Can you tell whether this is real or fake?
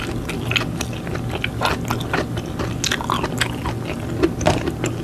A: real